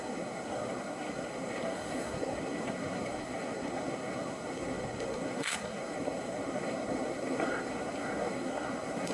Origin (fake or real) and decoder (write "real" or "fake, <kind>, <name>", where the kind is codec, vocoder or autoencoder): fake, codec, SNAC